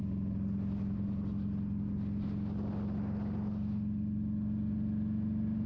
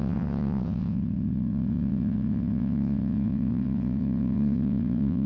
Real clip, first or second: first